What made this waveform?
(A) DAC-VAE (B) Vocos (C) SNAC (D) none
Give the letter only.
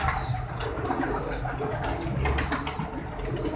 D